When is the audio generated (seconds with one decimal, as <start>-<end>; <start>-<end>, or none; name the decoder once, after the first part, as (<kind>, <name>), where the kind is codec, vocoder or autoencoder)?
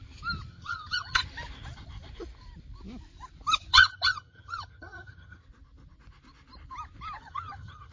0.5-1.2 (vocoder, HiFi-GAN); 3.7-5.4; 7.2-7.9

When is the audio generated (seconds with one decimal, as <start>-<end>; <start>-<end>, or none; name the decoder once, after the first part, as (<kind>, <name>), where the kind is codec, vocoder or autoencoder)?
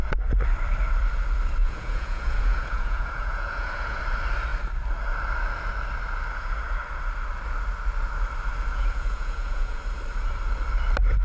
1.6-4.0 (vocoder, Vocos); 8.7-9.8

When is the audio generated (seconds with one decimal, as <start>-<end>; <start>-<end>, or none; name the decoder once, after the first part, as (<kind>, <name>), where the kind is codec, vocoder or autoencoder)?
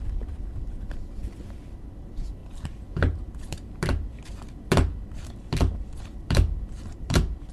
0.0-1.2 (vocoder, BigVGAN v2); 2.0-2.4; 6.0-7.5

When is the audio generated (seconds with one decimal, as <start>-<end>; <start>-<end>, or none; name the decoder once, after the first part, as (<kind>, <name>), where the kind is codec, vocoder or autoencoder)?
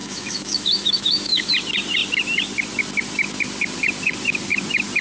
0.0-1.5 (autoencoder, DAC-VAE)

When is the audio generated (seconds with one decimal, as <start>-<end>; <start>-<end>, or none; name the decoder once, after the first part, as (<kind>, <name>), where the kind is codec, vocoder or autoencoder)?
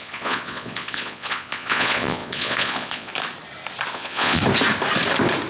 0.0-3.1 (vocoder, Vocos); 3.9-4.4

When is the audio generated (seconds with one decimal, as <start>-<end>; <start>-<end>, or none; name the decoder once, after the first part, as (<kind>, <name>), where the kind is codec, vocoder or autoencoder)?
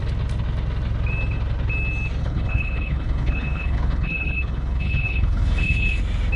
2.2-6.0 (codec, HILCodec)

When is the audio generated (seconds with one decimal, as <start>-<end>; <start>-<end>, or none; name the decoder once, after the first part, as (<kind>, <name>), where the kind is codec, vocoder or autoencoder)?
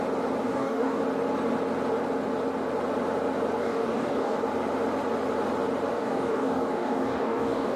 0.4-1.0 (codec, DAC); 3.6-4.4; 5.9-7.8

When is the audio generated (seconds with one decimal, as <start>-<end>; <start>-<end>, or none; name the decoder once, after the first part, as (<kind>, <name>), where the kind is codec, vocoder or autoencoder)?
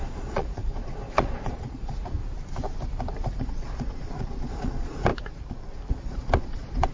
0.0-2.2 (vocoder, Vocos); 3.4-5.1; 5.9-6.9